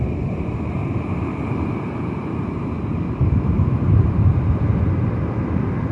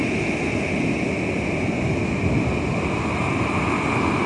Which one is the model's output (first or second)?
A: first